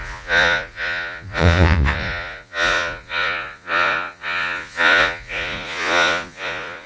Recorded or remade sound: remade